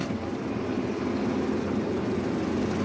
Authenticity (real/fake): real